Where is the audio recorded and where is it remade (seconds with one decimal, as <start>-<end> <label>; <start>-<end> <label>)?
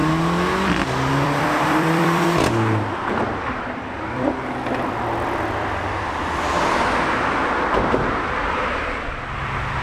0.0-1.1 recorded; 1.1-9.8 remade